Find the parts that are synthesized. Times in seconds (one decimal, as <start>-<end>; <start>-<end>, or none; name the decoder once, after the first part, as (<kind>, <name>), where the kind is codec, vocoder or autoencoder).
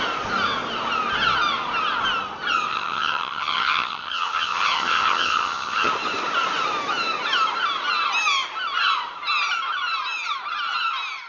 2.7-5.9 (vocoder, HiFi-GAN)